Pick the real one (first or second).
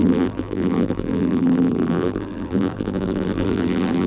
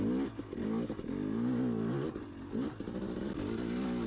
second